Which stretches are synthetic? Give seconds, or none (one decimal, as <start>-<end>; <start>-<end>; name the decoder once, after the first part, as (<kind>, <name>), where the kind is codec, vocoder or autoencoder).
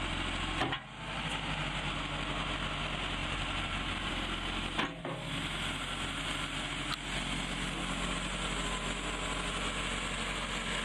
3.2-4.1 (vocoder, BigVGAN v2)